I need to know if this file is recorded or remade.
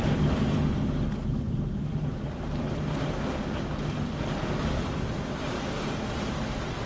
recorded